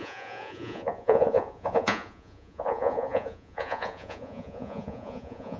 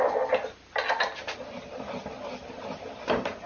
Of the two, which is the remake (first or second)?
first